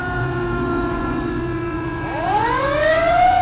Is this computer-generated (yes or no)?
yes